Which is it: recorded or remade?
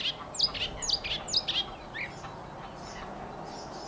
recorded